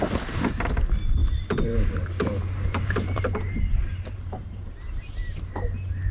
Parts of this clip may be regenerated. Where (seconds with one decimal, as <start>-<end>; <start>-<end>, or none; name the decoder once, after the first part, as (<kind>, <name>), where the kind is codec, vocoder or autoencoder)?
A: 1.2-4.7 (vocoder, BigVGAN v2)